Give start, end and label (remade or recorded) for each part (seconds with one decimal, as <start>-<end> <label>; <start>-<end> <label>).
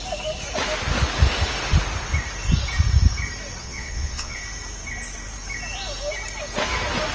0.0-3.6 recorded; 3.6-4.4 remade; 4.4-7.1 recorded